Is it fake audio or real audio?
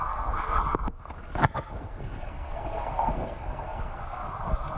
fake